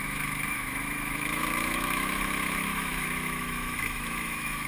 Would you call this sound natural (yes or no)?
no